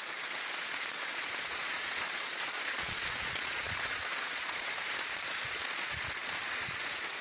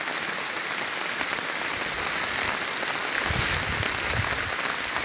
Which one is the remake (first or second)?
first